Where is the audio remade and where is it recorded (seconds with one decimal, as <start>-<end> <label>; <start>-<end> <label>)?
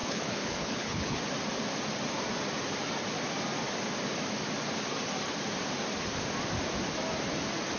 0.0-1.2 remade; 1.2-7.8 recorded